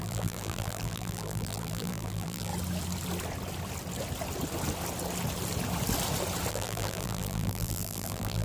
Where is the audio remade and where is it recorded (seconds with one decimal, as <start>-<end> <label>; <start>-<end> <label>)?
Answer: 0.0-2.5 remade; 2.5-6.5 recorded; 6.5-8.4 remade